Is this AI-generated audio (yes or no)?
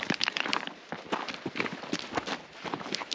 no